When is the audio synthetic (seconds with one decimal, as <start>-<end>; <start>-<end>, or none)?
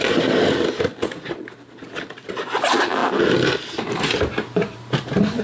3.0-5.4